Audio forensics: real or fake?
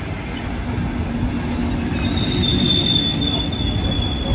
real